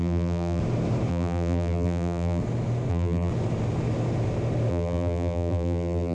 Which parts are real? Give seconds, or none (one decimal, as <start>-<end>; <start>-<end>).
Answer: 0.6-1.1; 2.4-2.9; 3.3-4.7